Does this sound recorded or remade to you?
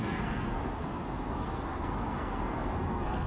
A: remade